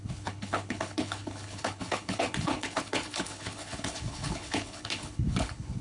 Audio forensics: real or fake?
fake